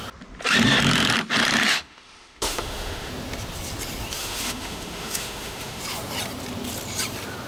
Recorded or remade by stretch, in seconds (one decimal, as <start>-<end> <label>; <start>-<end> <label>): 0.0-1.7 recorded; 1.7-3.1 remade; 3.1-4.2 recorded; 4.2-5.8 remade; 5.8-7.5 recorded